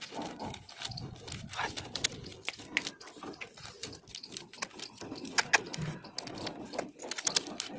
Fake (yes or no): no